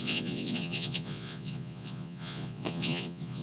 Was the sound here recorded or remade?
remade